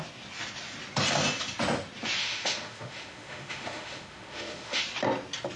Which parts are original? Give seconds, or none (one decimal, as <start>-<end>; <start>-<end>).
0.0-2.2; 4.8-5.6